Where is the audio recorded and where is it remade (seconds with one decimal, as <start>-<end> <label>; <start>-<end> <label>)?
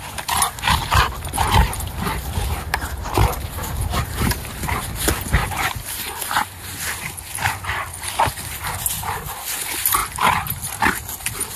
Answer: 0.0-1.6 recorded; 1.6-4.8 remade; 4.8-5.4 recorded; 5.4-7.3 remade; 7.3-11.6 recorded